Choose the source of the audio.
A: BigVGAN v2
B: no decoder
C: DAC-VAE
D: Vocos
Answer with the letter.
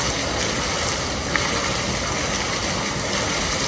B